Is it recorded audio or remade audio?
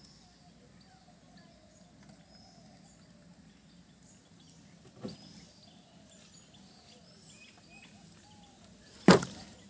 recorded